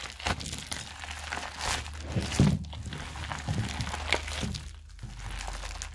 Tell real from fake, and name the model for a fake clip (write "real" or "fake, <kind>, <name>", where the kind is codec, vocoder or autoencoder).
real